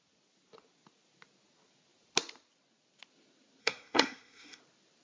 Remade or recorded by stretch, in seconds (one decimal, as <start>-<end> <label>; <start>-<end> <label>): 0.0-3.6 recorded; 3.6-4.6 remade; 4.6-5.0 recorded